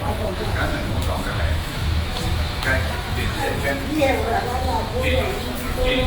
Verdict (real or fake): fake